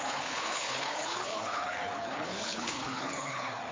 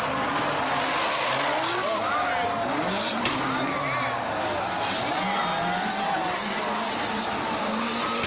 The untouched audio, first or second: second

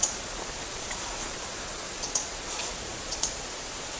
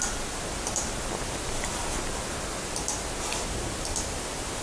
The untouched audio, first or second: second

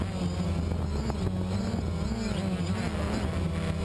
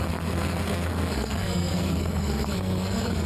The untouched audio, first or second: first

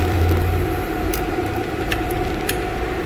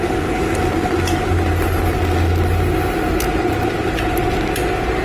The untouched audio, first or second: second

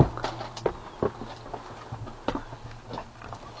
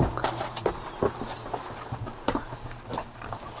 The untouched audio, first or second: first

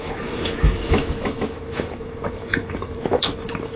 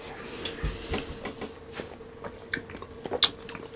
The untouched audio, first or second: second